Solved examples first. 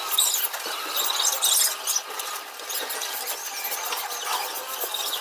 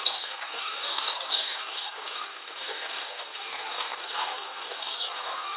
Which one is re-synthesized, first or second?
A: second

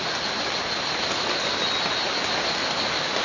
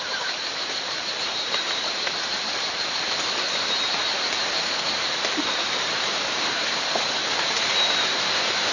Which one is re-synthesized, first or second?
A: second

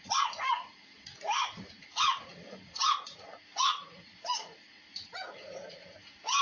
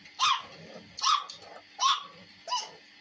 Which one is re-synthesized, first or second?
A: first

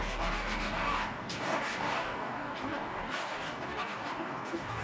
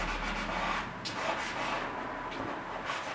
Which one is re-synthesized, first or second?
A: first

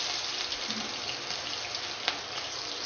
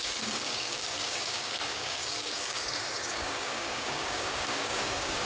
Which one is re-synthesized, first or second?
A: second